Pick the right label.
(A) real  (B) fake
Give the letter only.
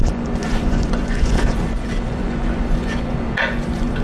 B